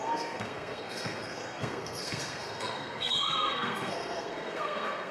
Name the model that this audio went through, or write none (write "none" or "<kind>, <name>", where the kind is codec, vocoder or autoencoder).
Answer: codec, SNAC